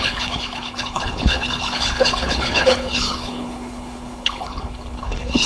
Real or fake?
fake